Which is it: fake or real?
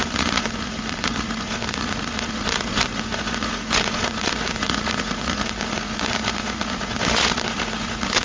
fake